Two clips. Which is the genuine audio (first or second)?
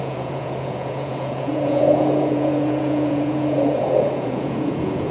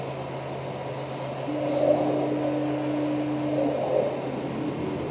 second